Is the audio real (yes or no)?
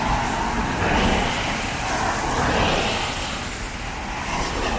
yes